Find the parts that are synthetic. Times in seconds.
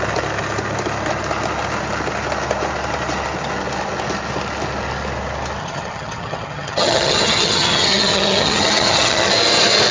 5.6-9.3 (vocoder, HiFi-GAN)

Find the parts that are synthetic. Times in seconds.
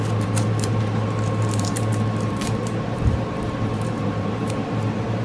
0.0-5.2 (vocoder, BigVGAN v2)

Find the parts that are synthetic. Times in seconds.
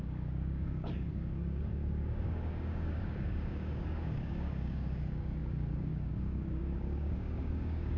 0.0-8.0 (codec, DAC)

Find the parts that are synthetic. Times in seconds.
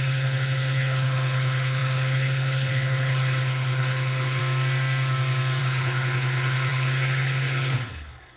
0.0-4.4 (codec, HILCodec); 5.6-8.4